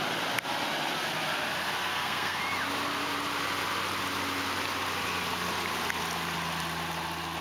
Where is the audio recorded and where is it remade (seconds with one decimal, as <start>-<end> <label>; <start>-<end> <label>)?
0.0-1.8 recorded; 1.8-2.4 remade; 2.4-7.4 recorded